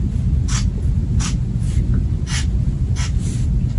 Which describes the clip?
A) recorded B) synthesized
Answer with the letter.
A